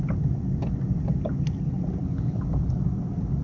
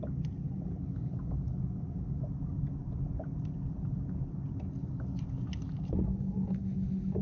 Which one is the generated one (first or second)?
first